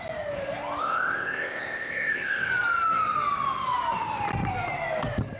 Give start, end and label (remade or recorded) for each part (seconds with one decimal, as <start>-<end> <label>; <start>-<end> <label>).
0.0-0.8 recorded; 0.8-2.5 remade; 2.5-5.4 recorded